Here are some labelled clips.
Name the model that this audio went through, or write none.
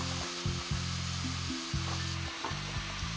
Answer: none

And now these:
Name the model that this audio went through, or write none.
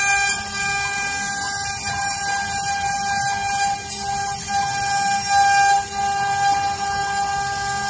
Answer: none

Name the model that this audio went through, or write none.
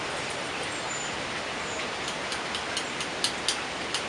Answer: none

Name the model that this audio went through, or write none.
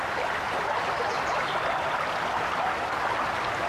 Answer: none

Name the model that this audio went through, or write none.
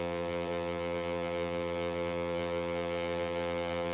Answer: vocoder, BigVGAN v2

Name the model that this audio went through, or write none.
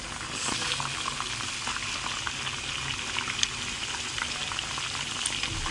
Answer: none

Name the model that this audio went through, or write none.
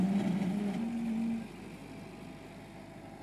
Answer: none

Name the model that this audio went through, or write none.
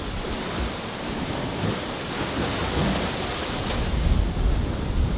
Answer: vocoder, BigVGAN v2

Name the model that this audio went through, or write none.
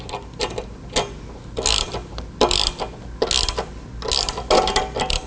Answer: none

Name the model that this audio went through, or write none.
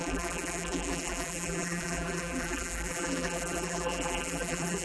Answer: vocoder, BigVGAN v2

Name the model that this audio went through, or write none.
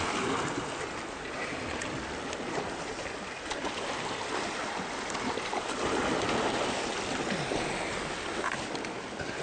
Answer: none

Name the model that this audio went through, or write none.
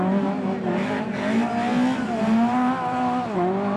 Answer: none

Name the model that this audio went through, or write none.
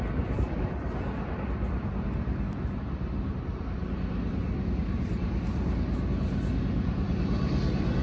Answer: none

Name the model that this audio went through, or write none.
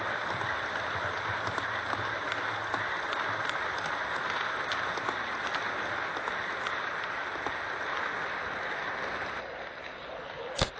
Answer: none